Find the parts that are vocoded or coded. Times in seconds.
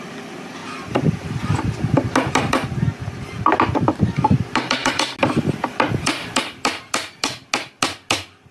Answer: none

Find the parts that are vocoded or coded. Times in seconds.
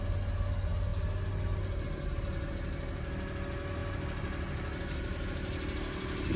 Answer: none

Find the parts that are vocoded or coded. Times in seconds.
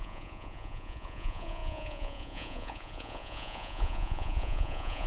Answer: 0.0-5.1 (vocoder, Vocos)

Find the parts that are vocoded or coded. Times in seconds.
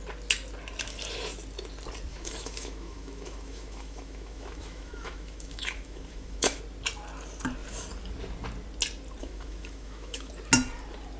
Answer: 2.1-6.6 (autoencoder, DAC-VAE); 9.2-10.3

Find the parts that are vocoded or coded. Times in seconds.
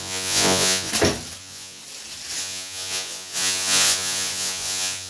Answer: 0.0-0.9 (vocoder, Vocos); 1.4-1.8; 2.4-5.1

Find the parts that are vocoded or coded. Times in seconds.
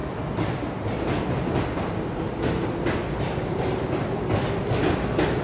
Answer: none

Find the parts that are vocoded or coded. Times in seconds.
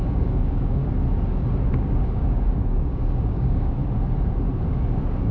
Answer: 0.0-0.8 (codec, DAC); 1.7-3.8; 4.7-5.3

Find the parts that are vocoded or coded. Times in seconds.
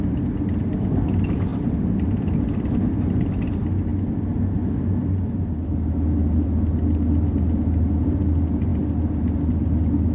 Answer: none